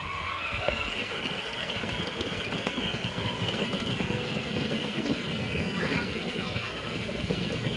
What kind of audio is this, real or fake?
fake